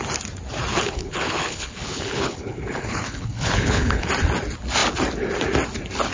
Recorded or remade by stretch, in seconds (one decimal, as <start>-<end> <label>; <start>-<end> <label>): 0.0-0.7 recorded; 0.7-4.1 remade; 4.1-6.1 recorded

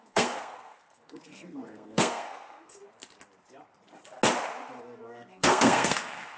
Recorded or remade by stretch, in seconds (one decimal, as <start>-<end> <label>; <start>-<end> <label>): 0.0-2.8 remade; 2.8-4.8 recorded; 4.8-6.4 remade

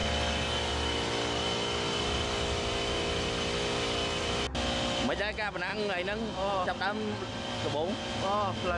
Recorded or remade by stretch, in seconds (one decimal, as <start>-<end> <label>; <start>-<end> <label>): 0.0-8.8 recorded

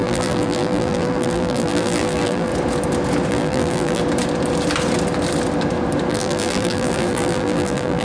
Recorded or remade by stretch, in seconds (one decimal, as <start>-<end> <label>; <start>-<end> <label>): 0.0-2.5 remade; 2.5-3.3 recorded; 3.3-4.0 remade; 4.0-6.1 recorded; 6.1-8.0 remade

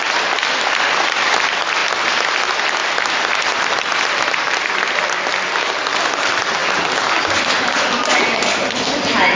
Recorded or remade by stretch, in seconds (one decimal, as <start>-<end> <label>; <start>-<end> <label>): 0.0-9.4 recorded

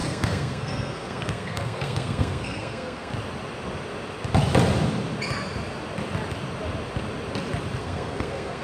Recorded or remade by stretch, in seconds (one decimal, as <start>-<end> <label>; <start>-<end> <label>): 0.0-3.1 remade; 3.1-7.8 recorded; 7.8-8.6 remade

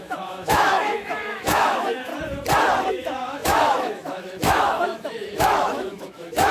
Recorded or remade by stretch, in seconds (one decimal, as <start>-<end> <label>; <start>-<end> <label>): 0.0-2.1 remade; 2.1-2.9 recorded; 2.9-6.5 remade

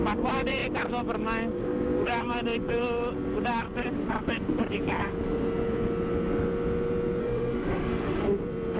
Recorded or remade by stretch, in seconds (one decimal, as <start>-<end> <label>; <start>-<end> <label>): 0.0-7.2 recorded; 7.2-8.2 remade; 8.2-8.8 recorded